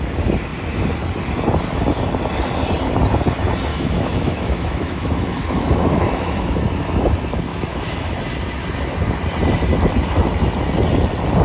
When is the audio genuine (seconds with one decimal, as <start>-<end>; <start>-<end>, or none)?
0.0-3.7; 6.6-7.5; 8.2-11.4